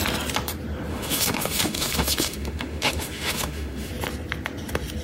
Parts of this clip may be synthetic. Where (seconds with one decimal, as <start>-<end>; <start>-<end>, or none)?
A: 0.9-3.9